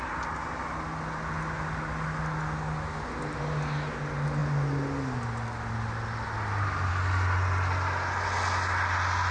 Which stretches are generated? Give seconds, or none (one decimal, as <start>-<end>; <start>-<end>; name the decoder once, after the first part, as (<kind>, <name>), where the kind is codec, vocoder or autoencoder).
none